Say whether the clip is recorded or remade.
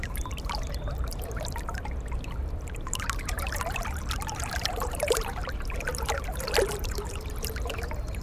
remade